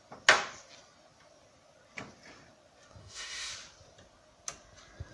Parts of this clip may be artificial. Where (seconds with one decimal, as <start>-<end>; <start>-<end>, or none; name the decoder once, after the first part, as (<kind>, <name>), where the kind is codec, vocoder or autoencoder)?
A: 3.0-3.5 (autoencoder, DAC-VAE)